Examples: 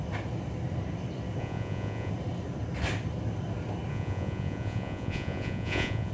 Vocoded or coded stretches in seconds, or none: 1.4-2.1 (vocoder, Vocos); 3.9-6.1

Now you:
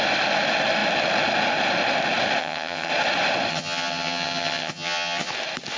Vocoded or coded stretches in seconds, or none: 2.4-2.9 (vocoder, HiFi-GAN); 3.5-5.3